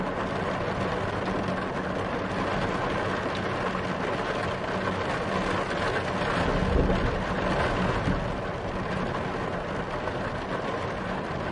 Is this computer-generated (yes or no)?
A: no